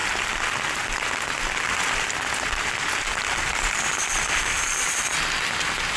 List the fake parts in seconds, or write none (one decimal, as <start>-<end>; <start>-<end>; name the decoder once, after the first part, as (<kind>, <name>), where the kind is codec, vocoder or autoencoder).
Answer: 3.1-5.1 (vocoder, BigVGAN v2)